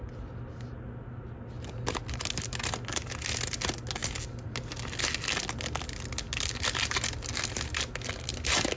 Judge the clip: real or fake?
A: real